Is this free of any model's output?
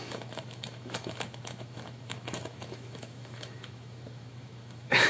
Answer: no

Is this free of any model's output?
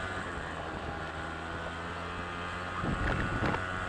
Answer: yes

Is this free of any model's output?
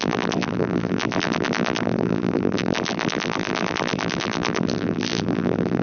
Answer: no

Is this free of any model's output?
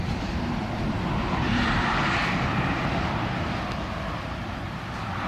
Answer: no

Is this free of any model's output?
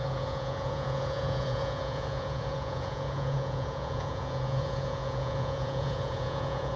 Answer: no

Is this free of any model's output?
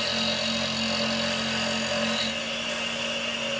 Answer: yes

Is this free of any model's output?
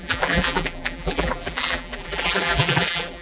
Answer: no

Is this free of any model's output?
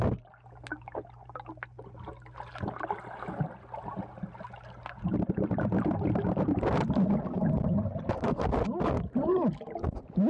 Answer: yes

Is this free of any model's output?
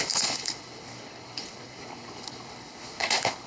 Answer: no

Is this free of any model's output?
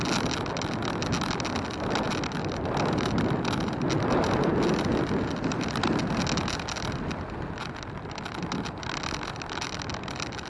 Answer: yes